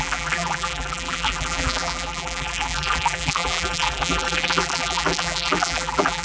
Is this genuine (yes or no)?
no